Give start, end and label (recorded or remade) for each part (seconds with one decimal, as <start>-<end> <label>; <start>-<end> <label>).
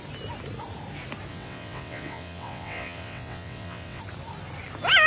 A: 0.0-1.3 recorded; 1.3-4.0 remade; 4.0-5.1 recorded